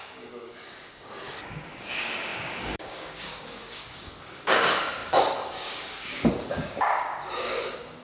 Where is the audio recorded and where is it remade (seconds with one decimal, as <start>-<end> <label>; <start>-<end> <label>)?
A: 0.0-8.0 remade